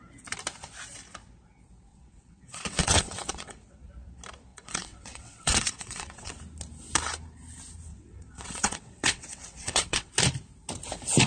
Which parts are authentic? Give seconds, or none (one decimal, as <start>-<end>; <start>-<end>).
0.0-1.9; 3.9-4.5; 6.3-7.9; 10.1-11.3